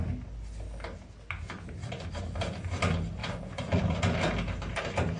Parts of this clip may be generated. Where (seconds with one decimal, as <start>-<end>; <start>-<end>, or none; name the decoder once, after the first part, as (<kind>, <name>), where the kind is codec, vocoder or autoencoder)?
3.2-3.8 (vocoder, Vocos)

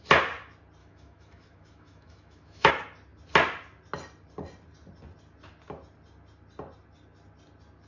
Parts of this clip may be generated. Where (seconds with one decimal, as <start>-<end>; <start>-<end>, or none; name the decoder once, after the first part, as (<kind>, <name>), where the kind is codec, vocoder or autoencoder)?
0.8-2.7 (autoencoder, DAC-VAE)

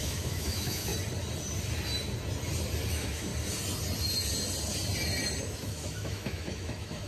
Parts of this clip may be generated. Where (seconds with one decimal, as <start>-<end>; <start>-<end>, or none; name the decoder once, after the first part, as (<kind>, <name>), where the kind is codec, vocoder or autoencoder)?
0.0-0.9 (autoencoder, DAC-VAE); 2.9-3.3; 5.4-7.1

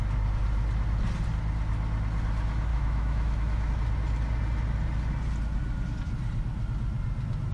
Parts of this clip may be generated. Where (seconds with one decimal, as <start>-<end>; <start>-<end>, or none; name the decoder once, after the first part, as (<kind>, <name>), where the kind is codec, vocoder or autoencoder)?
2.7-3.7 (autoencoder, DAC-VAE)